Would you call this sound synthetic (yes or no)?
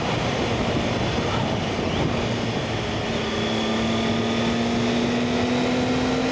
no